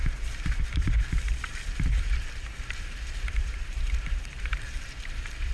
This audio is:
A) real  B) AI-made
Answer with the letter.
B